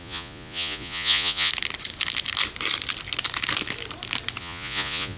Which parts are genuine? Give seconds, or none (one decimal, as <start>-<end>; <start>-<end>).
1.5-4.4